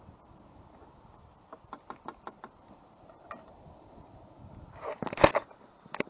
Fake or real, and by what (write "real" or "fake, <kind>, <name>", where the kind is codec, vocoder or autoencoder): fake, vocoder, BigVGAN v2